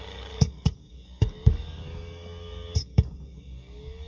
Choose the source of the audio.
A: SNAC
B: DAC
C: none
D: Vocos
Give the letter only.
B